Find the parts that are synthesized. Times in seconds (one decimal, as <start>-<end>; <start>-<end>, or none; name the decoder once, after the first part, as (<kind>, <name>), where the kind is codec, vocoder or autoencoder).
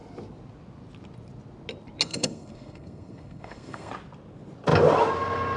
2.1-3.9 (codec, SNAC)